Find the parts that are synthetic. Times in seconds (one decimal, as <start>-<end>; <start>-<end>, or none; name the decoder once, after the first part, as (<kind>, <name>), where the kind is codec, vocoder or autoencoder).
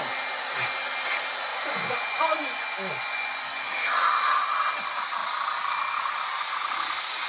1.5-3.7 (vocoder, Vocos)